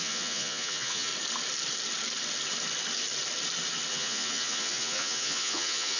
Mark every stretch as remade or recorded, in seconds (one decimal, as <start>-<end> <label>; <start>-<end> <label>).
0.0-1.1 remade; 1.1-3.9 recorded; 3.9-6.0 remade